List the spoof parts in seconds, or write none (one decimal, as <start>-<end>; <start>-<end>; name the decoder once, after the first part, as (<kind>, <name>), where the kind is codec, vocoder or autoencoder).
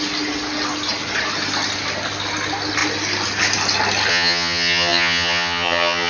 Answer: 4.1-6.1 (vocoder, HiFi-GAN)